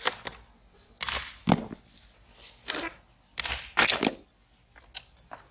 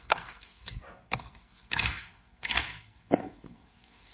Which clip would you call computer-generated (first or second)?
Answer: second